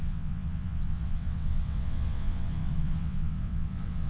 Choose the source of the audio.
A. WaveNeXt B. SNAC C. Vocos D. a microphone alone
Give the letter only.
A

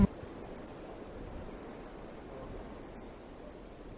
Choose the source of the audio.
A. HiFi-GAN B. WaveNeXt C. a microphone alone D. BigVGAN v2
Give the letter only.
C